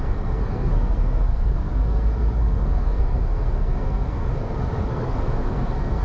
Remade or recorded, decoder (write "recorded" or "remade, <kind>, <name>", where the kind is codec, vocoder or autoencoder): remade, codec, SNAC